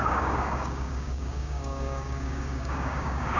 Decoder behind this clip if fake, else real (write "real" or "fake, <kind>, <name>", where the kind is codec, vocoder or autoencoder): fake, codec, DAC